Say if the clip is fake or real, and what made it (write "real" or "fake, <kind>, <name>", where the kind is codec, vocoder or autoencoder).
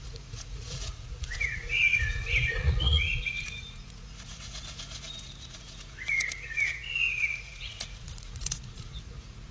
fake, vocoder, Vocos